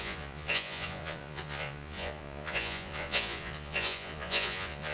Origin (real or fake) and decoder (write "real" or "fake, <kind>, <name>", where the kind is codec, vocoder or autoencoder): fake, vocoder, Vocos